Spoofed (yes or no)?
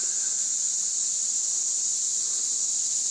no